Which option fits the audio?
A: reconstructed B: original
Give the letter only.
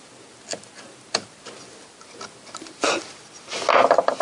B